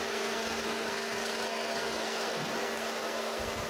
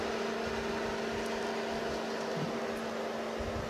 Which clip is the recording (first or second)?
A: second